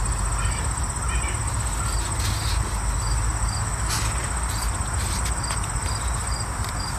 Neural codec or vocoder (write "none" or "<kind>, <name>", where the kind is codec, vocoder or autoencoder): none